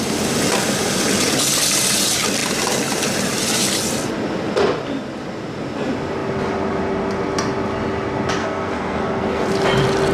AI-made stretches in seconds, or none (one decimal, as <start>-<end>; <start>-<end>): 8.4-9.5